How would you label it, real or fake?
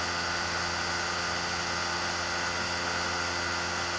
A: real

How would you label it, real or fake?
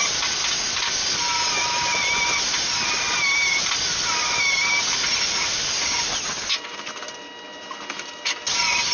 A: real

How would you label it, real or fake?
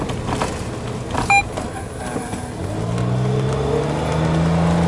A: real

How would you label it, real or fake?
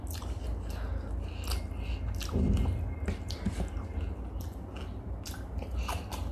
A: real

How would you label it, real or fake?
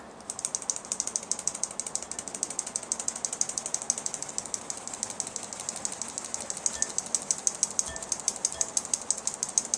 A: real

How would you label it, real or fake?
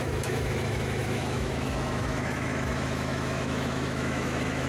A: fake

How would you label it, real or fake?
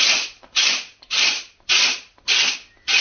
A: real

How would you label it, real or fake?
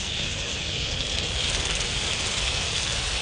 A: fake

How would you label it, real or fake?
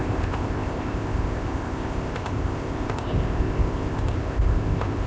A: fake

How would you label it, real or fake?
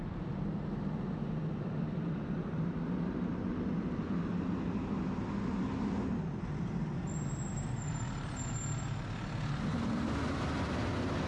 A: real